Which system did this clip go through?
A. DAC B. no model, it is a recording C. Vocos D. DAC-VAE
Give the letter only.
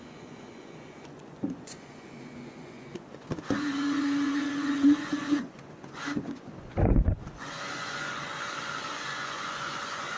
C